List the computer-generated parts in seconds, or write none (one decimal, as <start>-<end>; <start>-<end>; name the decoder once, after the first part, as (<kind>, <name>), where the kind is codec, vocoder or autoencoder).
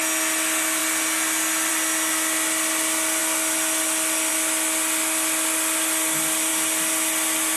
none